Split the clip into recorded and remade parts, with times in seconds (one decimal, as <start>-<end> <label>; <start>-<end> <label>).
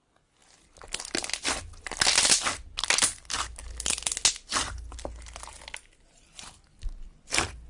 0.0-7.7 recorded